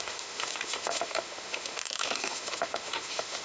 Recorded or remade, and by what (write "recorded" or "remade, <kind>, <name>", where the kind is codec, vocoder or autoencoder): remade, autoencoder, DAC-VAE